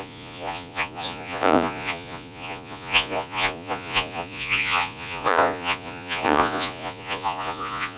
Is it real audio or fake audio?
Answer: fake